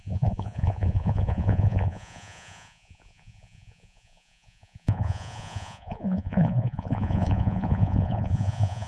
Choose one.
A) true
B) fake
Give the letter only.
B